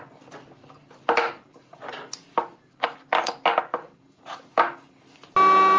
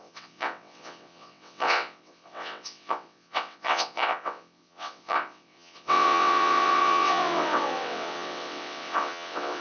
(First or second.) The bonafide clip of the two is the first